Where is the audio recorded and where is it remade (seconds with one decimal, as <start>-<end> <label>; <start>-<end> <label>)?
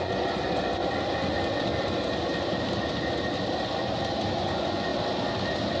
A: 0.0-0.8 remade; 0.8-4.3 recorded; 4.3-4.9 remade; 4.9-5.8 recorded